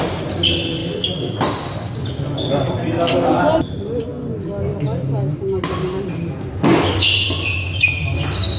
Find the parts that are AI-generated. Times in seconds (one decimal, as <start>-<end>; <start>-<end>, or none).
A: none